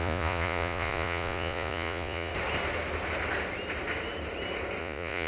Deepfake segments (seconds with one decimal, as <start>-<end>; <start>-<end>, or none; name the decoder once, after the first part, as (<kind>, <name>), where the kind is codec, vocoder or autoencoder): 0.0-2.3 (vocoder, Vocos); 4.8-5.3